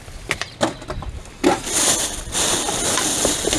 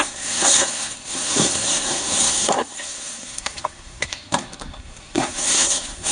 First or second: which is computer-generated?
second